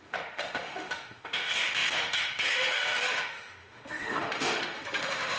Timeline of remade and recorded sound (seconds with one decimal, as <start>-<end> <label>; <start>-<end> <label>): 0.0-5.4 remade